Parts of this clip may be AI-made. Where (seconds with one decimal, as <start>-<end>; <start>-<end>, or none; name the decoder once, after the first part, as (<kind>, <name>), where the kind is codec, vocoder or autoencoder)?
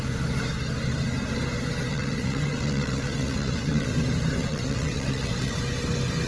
1.9-3.9 (vocoder, WaveNeXt); 4.4-5.6